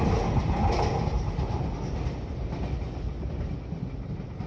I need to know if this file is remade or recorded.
recorded